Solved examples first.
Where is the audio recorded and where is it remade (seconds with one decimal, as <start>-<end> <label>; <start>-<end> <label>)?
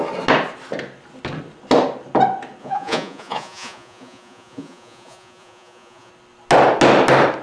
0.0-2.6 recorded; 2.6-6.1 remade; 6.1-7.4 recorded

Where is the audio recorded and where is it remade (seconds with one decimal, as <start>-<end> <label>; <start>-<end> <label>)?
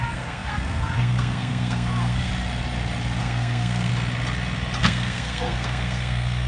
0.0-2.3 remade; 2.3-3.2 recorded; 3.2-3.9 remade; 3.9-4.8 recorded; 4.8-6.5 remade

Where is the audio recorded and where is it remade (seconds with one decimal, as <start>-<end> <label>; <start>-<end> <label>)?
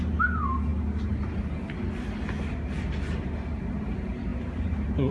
0.0-0.7 remade; 0.7-3.8 recorded; 3.8-5.1 remade